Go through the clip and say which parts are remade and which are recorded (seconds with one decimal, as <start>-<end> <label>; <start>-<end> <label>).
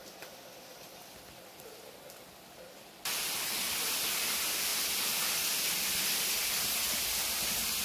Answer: 0.0-0.7 recorded; 0.7-1.8 remade; 1.8-4.7 recorded; 4.7-5.7 remade; 5.7-7.8 recorded